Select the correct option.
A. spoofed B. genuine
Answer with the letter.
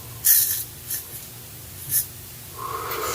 B